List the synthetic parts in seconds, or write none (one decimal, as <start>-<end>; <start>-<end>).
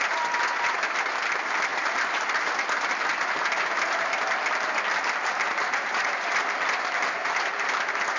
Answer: 1.7-2.3; 7.2-8.2